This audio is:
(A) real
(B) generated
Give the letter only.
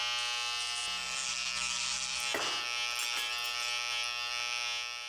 A